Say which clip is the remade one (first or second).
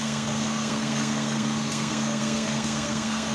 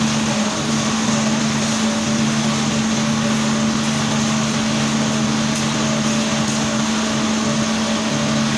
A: first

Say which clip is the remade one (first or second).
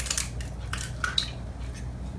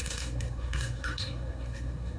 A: second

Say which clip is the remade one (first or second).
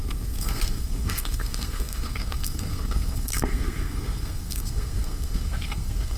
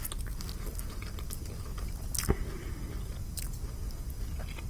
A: first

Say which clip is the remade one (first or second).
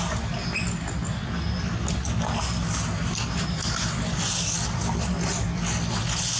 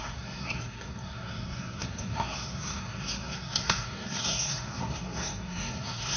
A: second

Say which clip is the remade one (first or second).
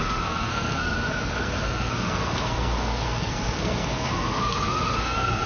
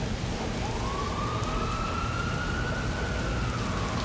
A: first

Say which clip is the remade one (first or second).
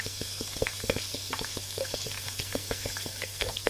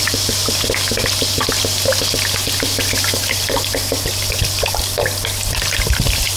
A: first